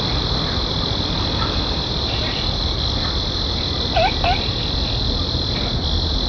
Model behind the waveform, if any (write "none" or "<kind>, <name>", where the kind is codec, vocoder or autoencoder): none